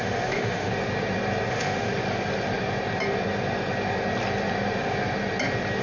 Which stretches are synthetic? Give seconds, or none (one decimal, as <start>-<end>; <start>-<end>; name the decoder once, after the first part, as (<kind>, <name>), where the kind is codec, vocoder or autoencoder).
0.0-0.7 (autoencoder, DAC-VAE); 1.5-1.9